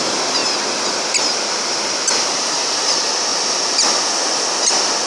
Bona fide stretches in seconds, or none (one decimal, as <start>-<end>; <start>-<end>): 0.0-5.1